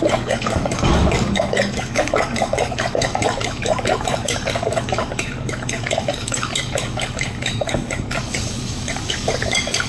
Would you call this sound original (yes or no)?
no